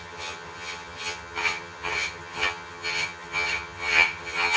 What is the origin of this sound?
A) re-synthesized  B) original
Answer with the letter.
A